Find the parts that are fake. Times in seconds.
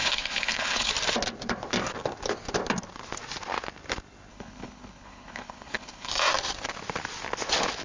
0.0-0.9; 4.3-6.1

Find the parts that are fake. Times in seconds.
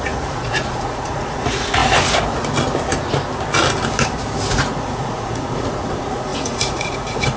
0.0-1.8; 4.5-7.4